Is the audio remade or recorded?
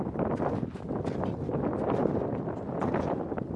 recorded